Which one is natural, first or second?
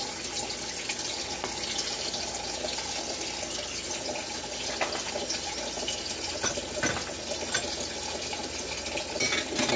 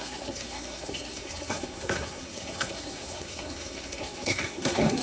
first